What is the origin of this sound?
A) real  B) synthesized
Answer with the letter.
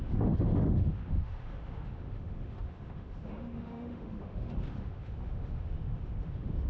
B